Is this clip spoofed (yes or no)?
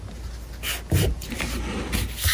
no